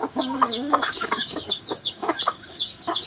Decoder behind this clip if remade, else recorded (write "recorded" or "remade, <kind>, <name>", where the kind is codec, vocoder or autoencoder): remade, codec, DAC